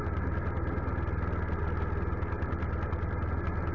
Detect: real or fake real